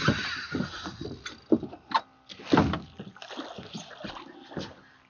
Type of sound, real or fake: real